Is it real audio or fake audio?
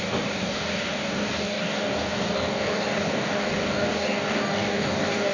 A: fake